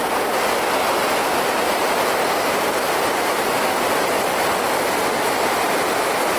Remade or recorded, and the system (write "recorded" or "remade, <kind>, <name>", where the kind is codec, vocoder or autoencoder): recorded